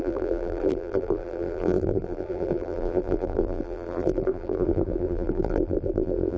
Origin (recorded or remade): remade